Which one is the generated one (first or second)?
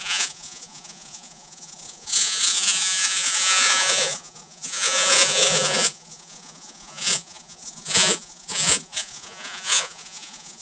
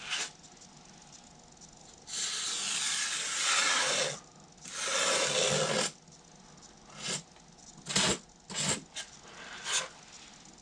first